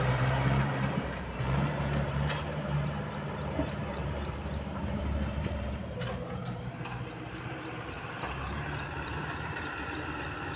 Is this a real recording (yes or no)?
no